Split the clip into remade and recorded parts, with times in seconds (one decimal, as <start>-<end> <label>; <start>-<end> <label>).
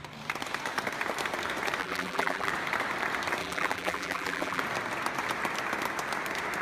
0.0-1.8 recorded; 1.8-2.5 remade; 2.5-3.4 recorded; 3.4-4.6 remade; 4.6-6.6 recorded